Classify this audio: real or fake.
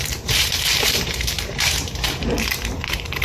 fake